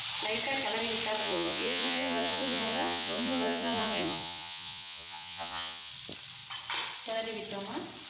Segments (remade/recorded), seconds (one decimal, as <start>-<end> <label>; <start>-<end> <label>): 0.0-1.2 recorded; 1.2-5.9 remade; 5.9-8.1 recorded